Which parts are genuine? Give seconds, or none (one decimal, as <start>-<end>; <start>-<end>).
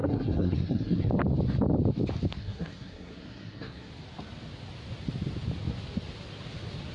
1.1-2.4; 3.9-6.9